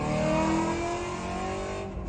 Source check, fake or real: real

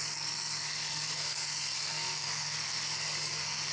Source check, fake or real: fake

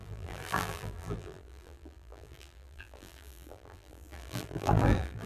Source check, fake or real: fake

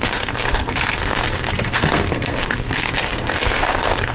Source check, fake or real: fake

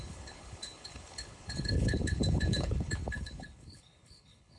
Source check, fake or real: fake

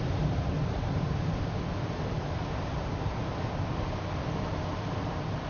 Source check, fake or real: real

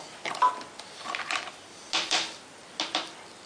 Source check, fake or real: real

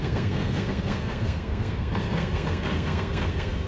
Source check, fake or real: fake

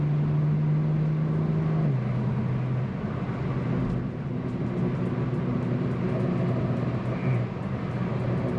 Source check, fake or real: real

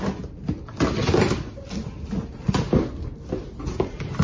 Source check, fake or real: real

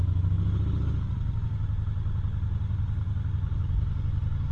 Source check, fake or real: real